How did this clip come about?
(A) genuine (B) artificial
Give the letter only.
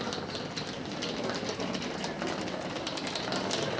A